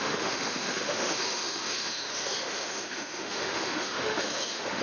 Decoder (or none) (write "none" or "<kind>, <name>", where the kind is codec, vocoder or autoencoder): autoencoder, DAC-VAE